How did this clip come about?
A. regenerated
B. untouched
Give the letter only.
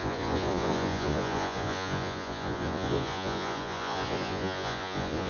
A